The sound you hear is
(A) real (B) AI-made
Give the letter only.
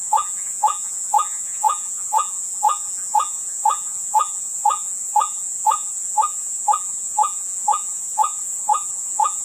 B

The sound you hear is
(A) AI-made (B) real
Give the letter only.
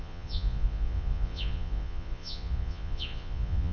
A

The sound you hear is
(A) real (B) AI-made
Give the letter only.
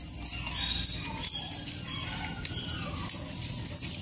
A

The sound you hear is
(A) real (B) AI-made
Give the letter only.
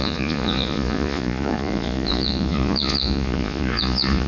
B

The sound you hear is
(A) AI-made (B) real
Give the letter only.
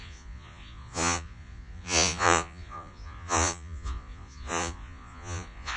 A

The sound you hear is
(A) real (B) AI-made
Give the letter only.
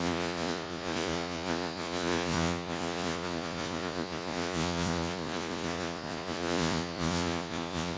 B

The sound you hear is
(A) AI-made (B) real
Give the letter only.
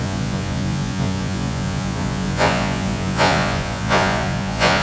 A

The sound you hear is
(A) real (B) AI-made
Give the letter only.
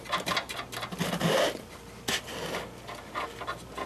A